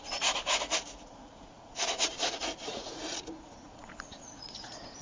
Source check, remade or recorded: remade